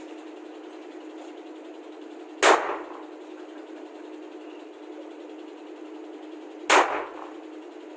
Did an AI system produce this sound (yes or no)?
no